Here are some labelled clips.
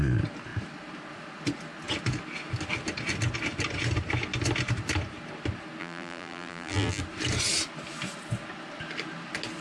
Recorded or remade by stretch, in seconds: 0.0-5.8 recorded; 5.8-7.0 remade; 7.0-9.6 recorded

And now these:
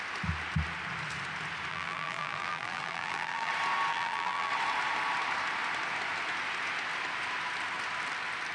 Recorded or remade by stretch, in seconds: 0.0-1.7 recorded; 1.7-3.5 remade; 3.5-3.9 recorded; 3.9-4.5 remade; 4.5-8.5 recorded